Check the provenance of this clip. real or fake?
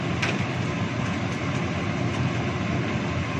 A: real